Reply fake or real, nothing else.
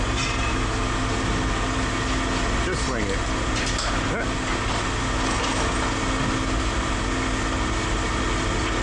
real